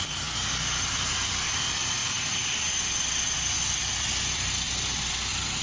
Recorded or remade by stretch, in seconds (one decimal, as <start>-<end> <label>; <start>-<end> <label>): 0.0-5.6 recorded